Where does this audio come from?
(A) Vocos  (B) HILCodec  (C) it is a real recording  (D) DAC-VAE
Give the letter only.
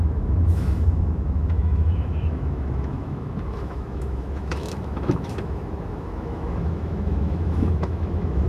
D